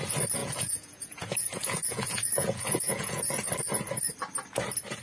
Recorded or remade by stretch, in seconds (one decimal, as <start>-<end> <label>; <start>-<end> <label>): 0.0-0.4 recorded; 0.4-3.3 remade; 3.3-5.0 recorded